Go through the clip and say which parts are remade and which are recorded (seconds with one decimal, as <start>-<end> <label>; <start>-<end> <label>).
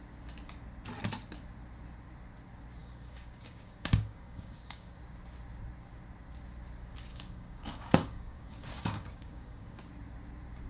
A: 0.0-2.8 recorded; 2.8-5.0 remade; 5.0-7.1 recorded; 7.1-9.9 remade; 9.9-10.7 recorded